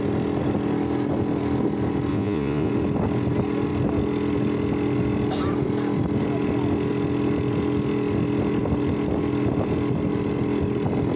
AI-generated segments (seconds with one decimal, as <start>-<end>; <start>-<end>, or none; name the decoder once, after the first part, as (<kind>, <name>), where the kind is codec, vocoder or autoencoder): 2.1-2.7 (vocoder, Vocos)